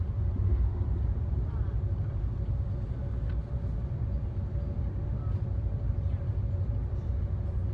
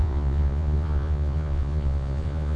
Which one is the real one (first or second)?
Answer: first